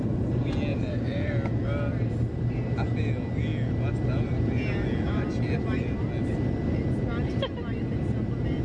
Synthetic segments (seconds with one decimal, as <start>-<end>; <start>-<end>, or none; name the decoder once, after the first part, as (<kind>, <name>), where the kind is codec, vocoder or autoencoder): 0.7-1.3 (vocoder, BigVGAN v2)